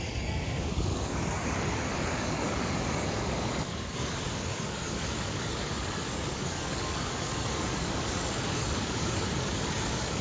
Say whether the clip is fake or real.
fake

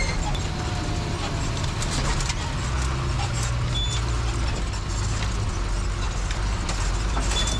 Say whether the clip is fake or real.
real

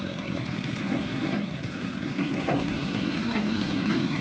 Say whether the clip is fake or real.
fake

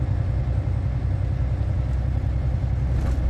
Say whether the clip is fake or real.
real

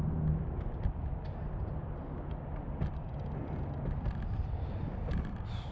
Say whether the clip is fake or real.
real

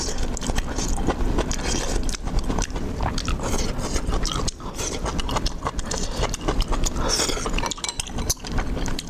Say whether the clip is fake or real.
real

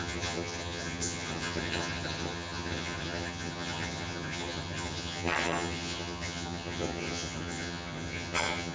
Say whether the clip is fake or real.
fake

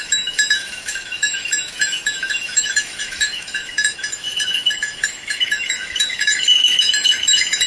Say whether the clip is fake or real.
fake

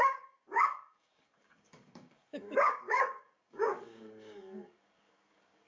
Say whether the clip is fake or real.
fake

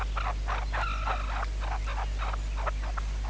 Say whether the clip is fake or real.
real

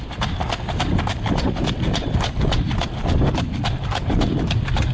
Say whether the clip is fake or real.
real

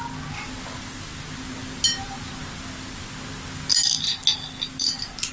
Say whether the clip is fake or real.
real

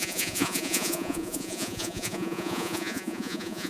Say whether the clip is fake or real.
fake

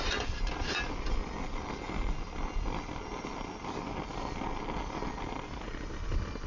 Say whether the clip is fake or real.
real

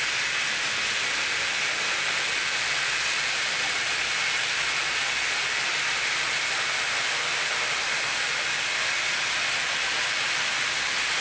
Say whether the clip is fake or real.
real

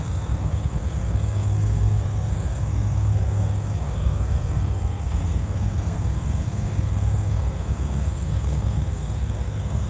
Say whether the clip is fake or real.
fake